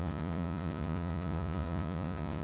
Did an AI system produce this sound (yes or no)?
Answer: yes